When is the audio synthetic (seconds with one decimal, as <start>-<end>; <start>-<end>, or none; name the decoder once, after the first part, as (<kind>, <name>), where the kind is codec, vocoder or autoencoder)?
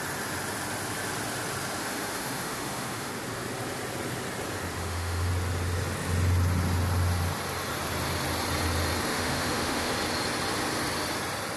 1.8-3.1 (autoencoder, DAC-VAE); 4.8-5.3; 9.1-9.9